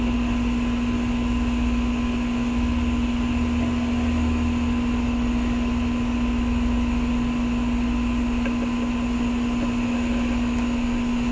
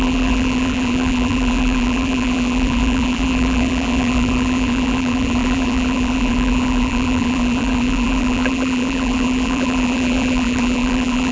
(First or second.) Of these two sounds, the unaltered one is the first